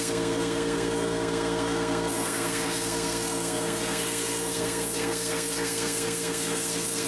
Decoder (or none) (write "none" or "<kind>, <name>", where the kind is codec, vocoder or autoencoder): codec, SNAC